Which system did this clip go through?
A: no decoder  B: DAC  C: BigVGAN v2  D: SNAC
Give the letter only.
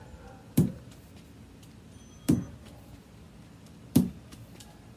A